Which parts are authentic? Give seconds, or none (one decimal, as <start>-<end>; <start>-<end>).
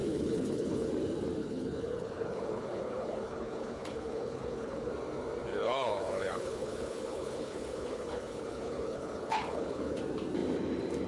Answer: 0.9-1.4; 4.9-5.5; 10.0-11.1